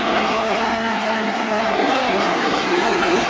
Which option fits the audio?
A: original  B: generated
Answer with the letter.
B